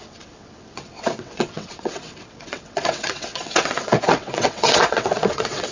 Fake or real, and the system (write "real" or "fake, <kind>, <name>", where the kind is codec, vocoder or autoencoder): fake, vocoder, WaveNeXt